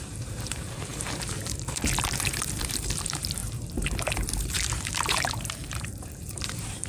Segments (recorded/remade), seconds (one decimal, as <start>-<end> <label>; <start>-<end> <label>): 0.0-6.9 remade